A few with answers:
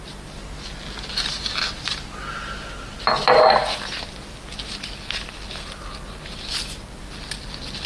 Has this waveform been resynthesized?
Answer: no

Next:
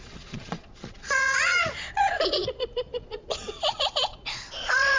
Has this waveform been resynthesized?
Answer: yes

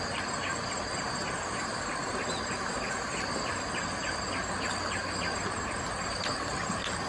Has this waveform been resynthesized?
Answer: no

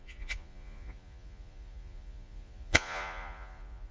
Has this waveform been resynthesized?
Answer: yes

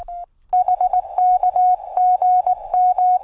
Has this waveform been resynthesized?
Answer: no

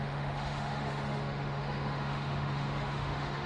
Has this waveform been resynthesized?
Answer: yes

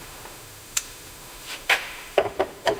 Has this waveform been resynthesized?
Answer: yes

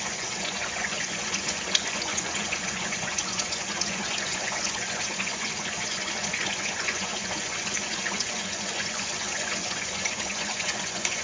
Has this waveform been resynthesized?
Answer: yes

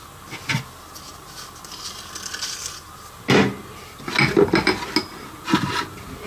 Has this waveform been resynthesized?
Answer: no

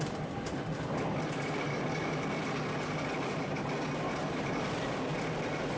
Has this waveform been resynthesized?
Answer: no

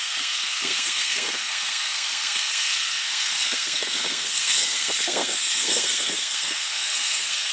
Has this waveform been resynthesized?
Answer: yes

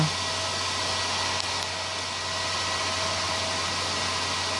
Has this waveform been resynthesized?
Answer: no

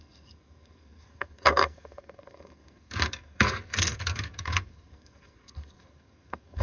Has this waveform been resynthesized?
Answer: yes